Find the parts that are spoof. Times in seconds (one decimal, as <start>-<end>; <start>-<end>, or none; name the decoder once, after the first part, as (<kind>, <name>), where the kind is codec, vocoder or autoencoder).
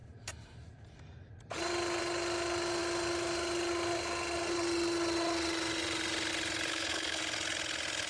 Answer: 6.7-7.2 (codec, SNAC)